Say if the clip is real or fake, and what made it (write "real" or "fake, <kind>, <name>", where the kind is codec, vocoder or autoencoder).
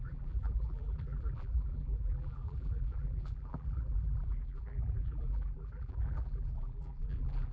fake, vocoder, BigVGAN v2